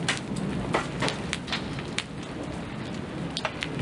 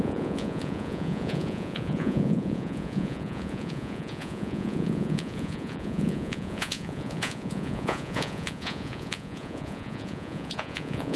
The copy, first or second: second